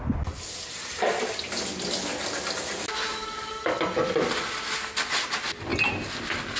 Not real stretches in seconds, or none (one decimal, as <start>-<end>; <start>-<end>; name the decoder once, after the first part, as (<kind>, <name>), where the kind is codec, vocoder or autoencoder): 3.1-3.8 (codec, DAC)